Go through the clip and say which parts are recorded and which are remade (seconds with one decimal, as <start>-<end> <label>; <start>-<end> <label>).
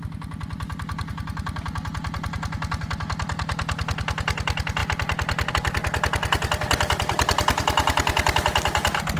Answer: 0.0-9.2 recorded